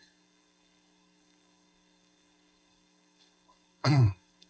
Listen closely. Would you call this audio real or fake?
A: fake